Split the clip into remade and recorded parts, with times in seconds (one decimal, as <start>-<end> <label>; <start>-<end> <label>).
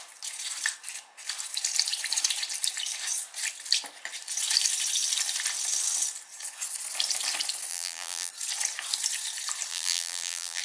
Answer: 0.0-7.7 recorded; 7.7-8.3 remade; 8.3-9.7 recorded; 9.7-10.6 remade